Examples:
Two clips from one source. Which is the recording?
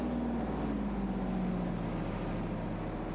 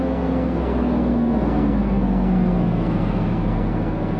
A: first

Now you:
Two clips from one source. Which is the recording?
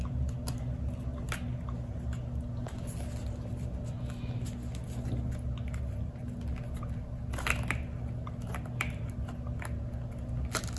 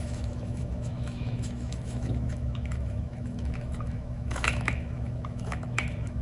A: first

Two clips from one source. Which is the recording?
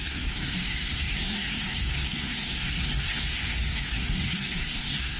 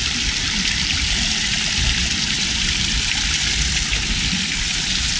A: second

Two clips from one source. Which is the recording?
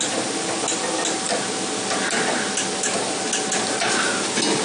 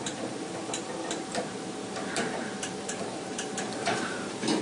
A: first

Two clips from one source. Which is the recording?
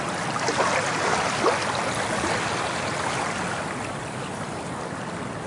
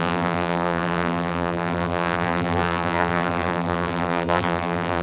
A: first